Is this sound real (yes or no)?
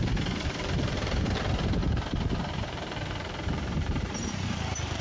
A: no